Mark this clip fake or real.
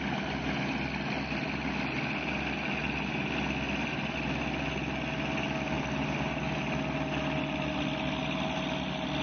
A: real